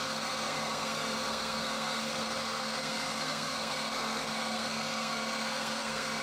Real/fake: fake